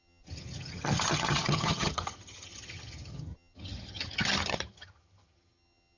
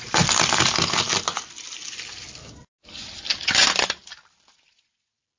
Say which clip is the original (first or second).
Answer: second